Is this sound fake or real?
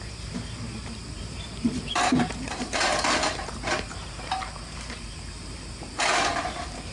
fake